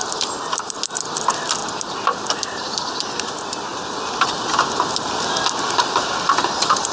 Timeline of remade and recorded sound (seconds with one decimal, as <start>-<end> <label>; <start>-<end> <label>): 0.0-6.9 recorded

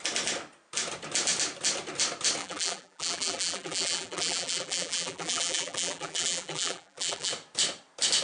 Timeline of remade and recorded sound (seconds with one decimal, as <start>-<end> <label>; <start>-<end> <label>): 0.0-2.4 recorded; 2.4-7.3 remade; 7.3-8.2 recorded

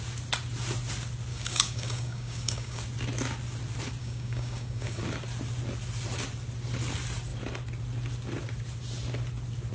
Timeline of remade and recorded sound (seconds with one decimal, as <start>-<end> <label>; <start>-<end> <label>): 0.0-1.3 recorded; 1.3-2.8 remade; 2.8-4.0 recorded; 4.0-5.0 remade; 5.0-9.7 recorded

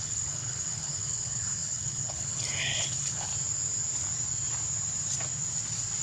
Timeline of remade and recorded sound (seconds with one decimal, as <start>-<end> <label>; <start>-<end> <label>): 0.0-3.3 remade; 3.3-6.0 recorded

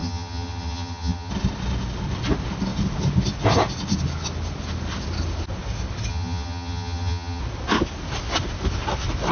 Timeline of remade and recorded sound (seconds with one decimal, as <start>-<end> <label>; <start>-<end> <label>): 0.0-1.3 remade; 1.3-6.1 recorded; 6.1-7.4 remade; 7.4-9.3 recorded

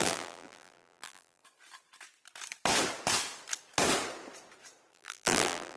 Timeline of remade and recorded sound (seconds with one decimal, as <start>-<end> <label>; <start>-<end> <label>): 0.0-1.4 remade; 1.4-4.9 recorded; 4.9-5.8 remade

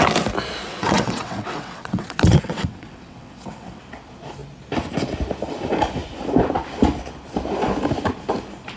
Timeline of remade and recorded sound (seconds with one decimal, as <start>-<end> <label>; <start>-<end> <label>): 0.0-0.6 recorded; 0.6-3.8 remade; 3.8-8.8 recorded

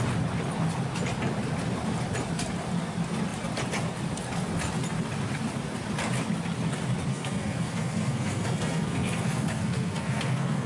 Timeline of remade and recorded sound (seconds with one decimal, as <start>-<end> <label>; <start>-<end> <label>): 0.0-7.1 recorded; 7.1-10.7 remade